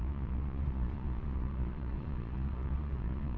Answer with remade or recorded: remade